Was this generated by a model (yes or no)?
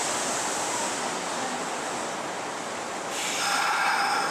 no